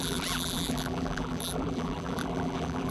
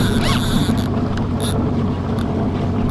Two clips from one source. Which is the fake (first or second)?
first